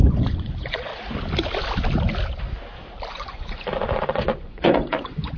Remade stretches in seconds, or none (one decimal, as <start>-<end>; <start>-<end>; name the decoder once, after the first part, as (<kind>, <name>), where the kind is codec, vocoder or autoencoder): 0.0-0.9 (vocoder, Vocos); 3.1-5.4